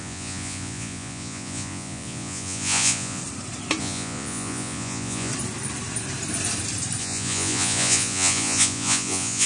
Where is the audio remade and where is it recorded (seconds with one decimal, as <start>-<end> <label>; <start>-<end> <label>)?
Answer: 0.0-3.2 remade; 3.2-3.8 recorded; 3.8-5.3 remade; 5.3-7.0 recorded; 7.0-9.5 remade